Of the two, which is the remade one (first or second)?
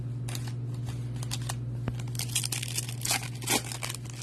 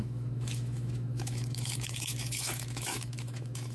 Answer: second